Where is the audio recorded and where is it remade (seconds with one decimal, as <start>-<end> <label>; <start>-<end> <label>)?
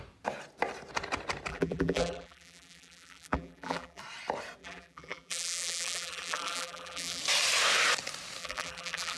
0.0-1.5 recorded; 1.5-4.0 remade; 4.0-4.6 recorded; 4.6-7.2 remade; 7.2-8.4 recorded; 8.4-9.2 remade